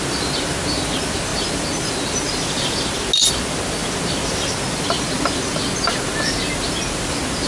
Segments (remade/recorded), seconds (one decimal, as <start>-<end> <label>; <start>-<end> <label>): 0.0-7.5 recorded